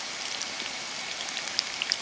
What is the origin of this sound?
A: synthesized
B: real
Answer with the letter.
B